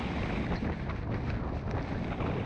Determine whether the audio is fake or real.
real